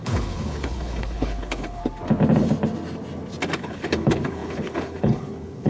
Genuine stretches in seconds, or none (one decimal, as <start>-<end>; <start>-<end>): 1.8-3.5